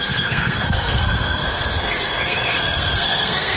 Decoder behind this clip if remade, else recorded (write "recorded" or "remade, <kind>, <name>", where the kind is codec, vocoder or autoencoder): remade, codec, SNAC